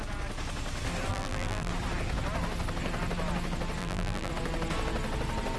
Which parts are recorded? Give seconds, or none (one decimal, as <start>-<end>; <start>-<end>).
0.0-1.1; 1.7-3.8; 4.3-5.6